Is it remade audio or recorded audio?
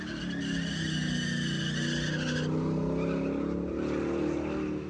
recorded